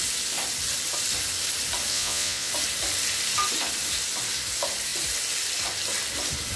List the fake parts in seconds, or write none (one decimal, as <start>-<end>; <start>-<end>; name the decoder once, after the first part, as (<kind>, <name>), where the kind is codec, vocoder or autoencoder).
1.9-2.5 (vocoder, Vocos)